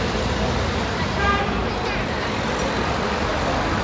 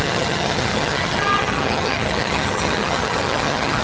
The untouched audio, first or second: first